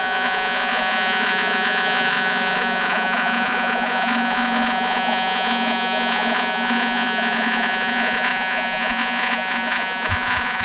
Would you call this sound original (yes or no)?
no